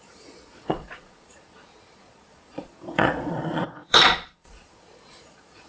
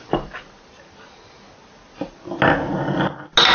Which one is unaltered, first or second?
second